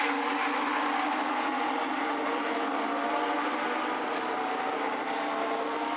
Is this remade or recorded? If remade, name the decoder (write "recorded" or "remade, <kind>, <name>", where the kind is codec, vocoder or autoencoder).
recorded